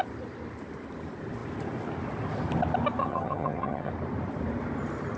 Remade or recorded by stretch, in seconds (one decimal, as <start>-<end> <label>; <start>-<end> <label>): 0.0-3.0 recorded; 3.0-3.9 remade; 3.9-5.2 recorded